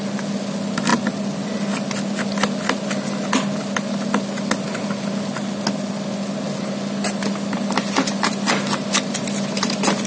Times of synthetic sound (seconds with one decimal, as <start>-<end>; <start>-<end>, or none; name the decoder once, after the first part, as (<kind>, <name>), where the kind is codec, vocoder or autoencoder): none